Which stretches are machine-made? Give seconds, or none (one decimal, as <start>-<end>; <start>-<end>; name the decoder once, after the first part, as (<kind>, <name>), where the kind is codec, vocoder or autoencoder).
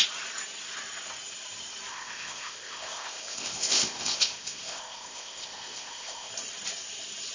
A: 1.9-6.3 (codec, ZipCodec)